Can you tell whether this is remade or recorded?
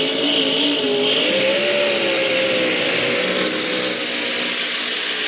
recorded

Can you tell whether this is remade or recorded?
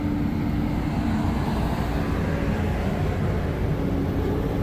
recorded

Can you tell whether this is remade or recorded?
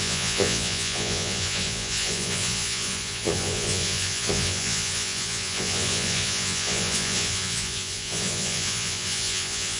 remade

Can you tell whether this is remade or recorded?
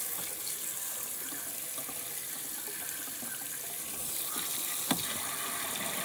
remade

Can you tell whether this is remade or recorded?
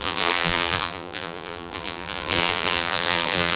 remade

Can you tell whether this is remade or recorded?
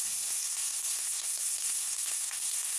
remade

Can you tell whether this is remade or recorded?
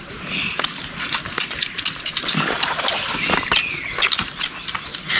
recorded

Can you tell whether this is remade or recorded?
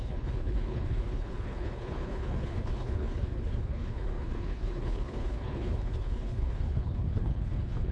remade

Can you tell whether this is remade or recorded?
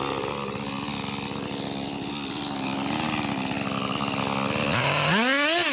recorded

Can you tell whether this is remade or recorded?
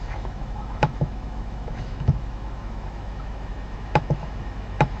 remade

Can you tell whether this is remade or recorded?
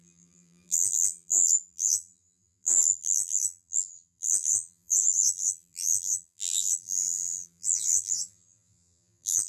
remade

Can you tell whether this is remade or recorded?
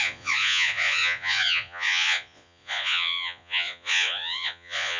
remade